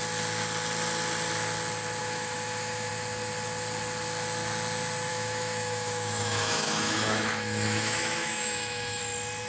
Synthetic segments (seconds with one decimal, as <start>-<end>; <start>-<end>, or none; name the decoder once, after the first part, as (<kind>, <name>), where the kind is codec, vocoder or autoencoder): 2.0-2.9 (autoencoder, DAC-VAE); 5.1-9.0

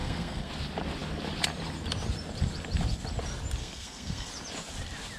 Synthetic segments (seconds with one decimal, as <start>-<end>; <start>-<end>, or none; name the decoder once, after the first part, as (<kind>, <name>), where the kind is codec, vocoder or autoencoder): 0.0-0.5 (codec, SNAC); 3.6-4.3